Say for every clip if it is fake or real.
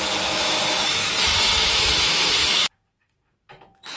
fake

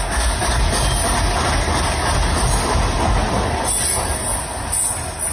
real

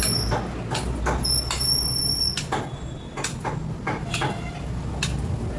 real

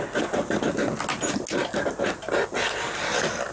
real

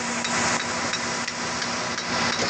real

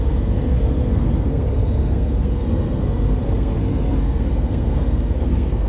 fake